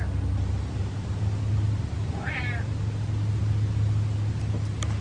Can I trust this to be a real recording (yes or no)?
yes